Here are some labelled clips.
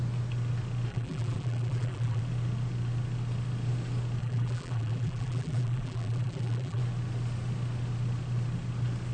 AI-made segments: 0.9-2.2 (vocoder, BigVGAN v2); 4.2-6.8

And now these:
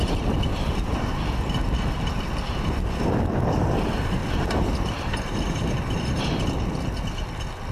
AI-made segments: 4.2-6.2 (vocoder, BigVGAN v2)

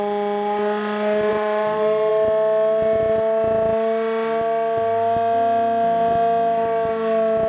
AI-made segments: 1.3-2.1 (vocoder, BigVGAN v2)

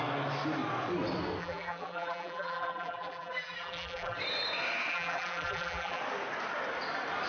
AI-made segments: 1.4-4.2 (vocoder, BigVGAN v2); 4.9-6.0

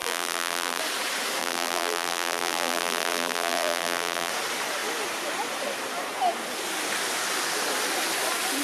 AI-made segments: 0.0-0.8 (vocoder, BigVGAN v2); 1.4-4.3

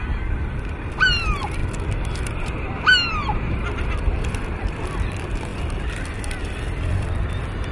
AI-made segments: 0.0-7.7 (vocoder, BigVGAN v2)

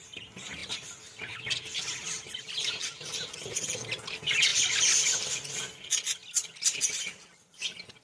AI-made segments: 4.5-5.3 (vocoder, BigVGAN v2)